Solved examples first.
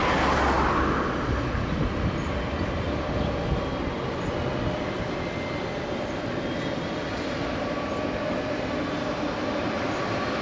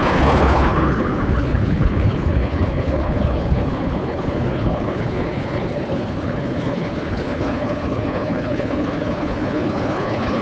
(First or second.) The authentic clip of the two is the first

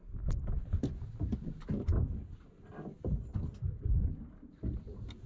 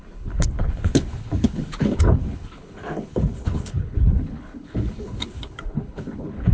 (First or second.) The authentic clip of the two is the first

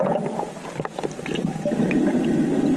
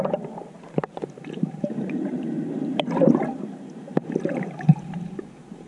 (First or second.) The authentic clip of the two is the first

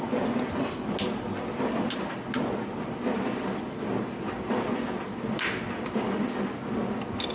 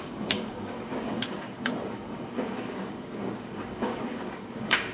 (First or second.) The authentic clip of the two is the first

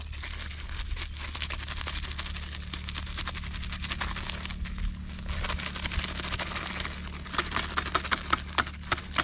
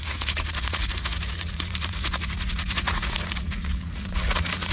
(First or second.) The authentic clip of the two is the first